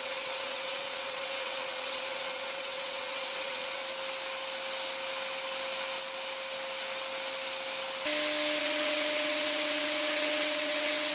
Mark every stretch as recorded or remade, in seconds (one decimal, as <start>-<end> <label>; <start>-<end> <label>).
0.0-3.8 remade; 3.8-8.6 recorded; 8.6-11.1 remade